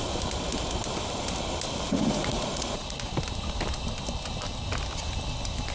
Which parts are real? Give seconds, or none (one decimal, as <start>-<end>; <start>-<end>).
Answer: 0.0-1.9; 3.1-5.7